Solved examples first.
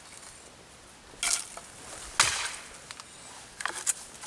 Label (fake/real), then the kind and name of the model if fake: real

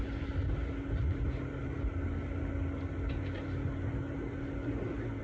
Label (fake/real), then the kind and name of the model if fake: real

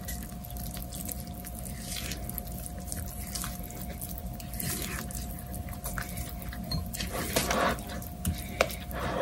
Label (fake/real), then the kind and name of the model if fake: real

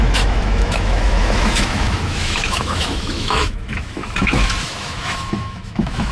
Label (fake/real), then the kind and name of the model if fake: fake, autoencoder, DAC-VAE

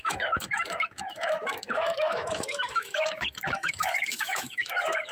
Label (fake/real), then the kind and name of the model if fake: fake, autoencoder, DAC-VAE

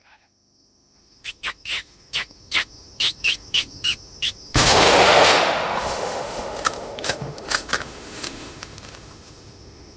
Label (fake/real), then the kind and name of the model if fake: fake, autoencoder, DAC-VAE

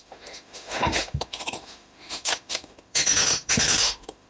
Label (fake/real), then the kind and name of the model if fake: fake, autoencoder, DAC-VAE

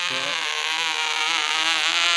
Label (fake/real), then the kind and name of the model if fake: fake, autoencoder, DAC-VAE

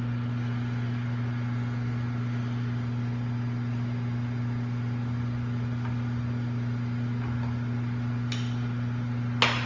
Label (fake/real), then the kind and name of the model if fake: real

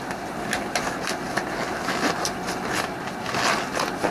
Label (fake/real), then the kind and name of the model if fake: real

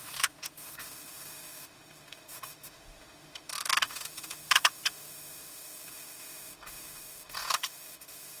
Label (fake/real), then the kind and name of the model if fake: fake, autoencoder, DAC-VAE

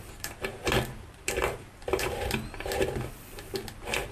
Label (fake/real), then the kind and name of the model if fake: real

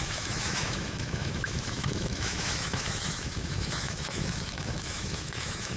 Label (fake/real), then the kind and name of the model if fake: fake, autoencoder, DAC-VAE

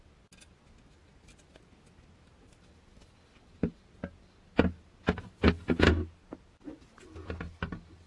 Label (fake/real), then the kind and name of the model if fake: real